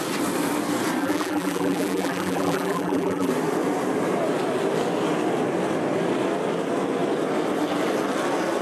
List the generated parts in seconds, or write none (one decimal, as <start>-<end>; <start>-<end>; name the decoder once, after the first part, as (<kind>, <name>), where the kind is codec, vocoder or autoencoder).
1.0-3.3 (vocoder, BigVGAN v2)